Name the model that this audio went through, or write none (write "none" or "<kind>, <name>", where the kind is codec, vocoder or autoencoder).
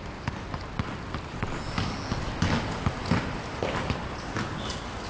none